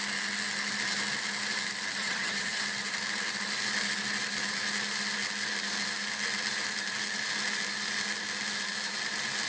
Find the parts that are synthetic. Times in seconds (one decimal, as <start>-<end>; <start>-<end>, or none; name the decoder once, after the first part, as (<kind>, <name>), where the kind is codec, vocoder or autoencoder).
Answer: 2.0-2.6 (vocoder, HiFi-GAN)